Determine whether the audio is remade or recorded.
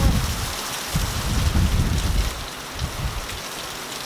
recorded